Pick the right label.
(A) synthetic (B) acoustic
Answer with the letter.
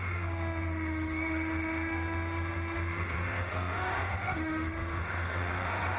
A